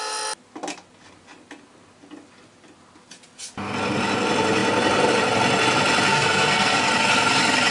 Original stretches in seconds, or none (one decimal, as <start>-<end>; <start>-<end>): 0.0-6.1; 6.9-7.7